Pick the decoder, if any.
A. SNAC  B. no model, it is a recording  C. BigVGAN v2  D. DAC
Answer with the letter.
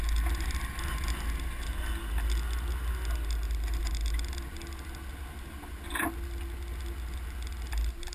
B